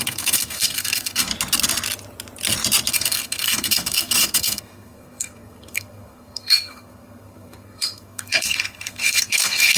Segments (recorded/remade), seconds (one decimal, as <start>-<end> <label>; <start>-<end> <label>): 0.0-1.3 remade; 1.3-2.9 recorded; 2.9-9.8 remade